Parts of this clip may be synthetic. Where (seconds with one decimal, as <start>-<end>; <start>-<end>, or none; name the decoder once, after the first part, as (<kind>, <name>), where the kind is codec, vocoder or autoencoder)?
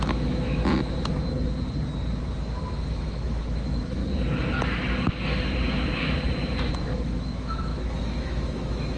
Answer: 0.0-0.6 (autoencoder, DAC-VAE); 2.8-4.0; 6.7-9.0